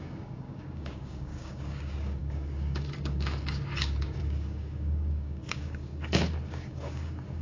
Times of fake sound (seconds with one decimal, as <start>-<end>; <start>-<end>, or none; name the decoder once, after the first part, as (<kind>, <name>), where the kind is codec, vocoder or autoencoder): 0.0-7.4 (codec, DAC)